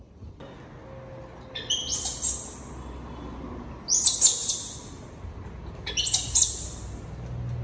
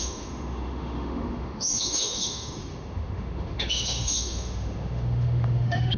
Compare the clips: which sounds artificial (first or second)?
second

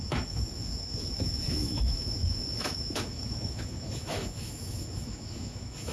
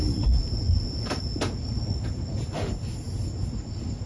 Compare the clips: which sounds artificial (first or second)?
first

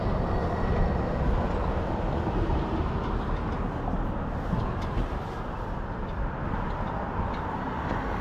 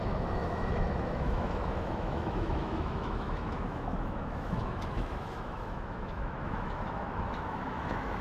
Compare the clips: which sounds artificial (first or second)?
second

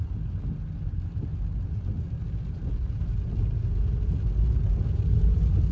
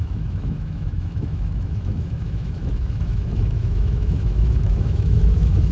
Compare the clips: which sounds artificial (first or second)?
second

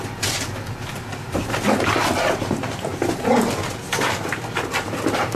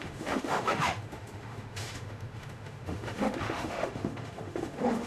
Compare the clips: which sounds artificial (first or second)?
second